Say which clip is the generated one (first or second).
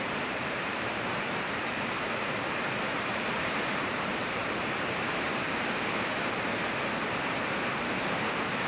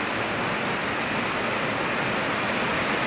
first